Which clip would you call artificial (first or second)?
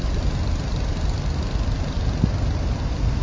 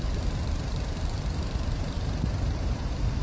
second